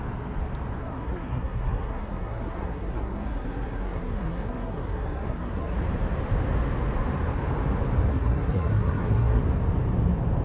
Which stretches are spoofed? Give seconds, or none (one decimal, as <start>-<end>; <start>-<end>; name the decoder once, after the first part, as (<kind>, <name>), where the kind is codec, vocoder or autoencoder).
0.8-5.8 (codec, SNAC); 8.1-9.4

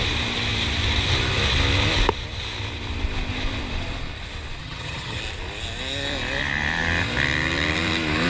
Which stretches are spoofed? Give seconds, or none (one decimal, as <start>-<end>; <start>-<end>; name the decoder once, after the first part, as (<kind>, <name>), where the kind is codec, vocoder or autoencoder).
4.6-5.2 (vocoder, HiFi-GAN)

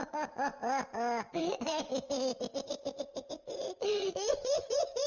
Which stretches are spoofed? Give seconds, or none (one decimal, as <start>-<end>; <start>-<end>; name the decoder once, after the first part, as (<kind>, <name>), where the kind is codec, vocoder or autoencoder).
0.0-0.6 (vocoder, Vocos); 1.4-1.9; 3.0-5.1

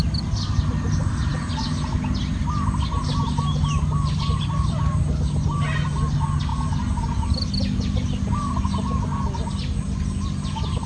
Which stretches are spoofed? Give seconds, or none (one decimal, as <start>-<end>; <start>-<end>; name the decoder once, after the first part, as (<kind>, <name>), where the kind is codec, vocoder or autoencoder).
none

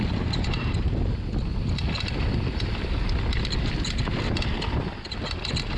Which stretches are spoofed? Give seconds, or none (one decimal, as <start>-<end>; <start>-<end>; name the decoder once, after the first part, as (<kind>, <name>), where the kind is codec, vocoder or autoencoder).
none

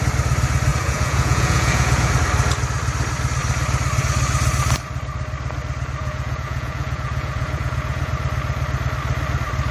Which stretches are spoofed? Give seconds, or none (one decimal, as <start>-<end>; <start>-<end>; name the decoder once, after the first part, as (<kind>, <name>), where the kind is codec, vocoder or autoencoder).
0.7-2.1 (vocoder, Vocos); 6.0-8.1

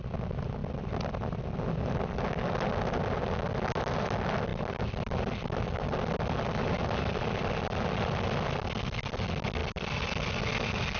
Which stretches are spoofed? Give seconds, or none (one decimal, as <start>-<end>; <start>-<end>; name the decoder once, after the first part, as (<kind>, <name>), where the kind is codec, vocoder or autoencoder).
0.6-1.1 (vocoder, BigVGAN v2)